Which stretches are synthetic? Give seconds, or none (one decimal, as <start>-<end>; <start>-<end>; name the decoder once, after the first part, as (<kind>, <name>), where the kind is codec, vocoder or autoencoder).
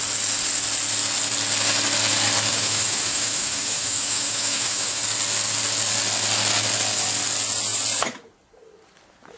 2.5-5.0 (autoencoder, DAC-VAE)